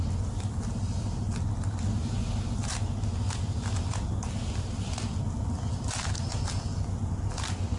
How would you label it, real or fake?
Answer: real